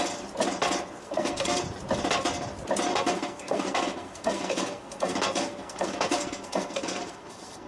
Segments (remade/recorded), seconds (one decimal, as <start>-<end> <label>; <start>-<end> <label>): 0.0-1.0 recorded; 1.0-1.6 remade; 1.6-2.9 recorded; 2.9-7.7 remade

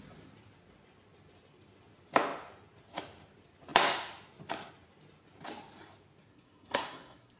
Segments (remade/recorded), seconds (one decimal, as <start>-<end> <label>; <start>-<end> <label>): 0.0-6.3 recorded; 6.3-7.4 remade

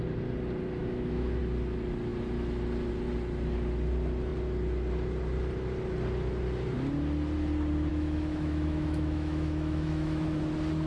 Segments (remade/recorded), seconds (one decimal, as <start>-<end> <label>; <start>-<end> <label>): 0.0-0.8 recorded; 0.8-1.4 remade; 1.4-7.9 recorded; 7.9-10.4 remade; 10.4-10.9 recorded

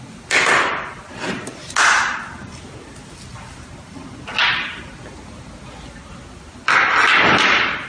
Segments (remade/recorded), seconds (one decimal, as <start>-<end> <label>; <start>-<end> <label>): 0.0-7.9 recorded

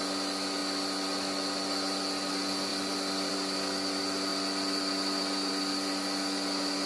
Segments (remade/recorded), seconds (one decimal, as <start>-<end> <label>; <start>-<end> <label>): 0.0-6.9 recorded

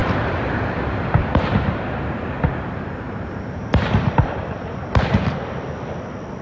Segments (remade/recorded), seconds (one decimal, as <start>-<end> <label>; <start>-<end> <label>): 0.0-0.5 remade; 0.5-1.2 recorded; 1.2-5.0 remade; 5.0-6.4 recorded